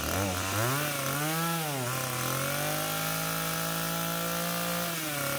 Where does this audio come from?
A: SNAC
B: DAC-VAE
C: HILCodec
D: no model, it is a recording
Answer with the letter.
D